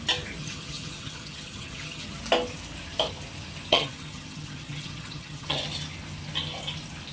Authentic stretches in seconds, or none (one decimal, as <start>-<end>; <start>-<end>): 0.0-0.4; 2.1-3.7; 5.6-7.1